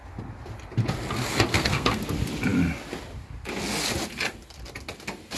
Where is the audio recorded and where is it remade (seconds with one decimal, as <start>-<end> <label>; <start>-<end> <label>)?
0.0-1.5 recorded; 1.5-2.0 remade; 2.0-5.4 recorded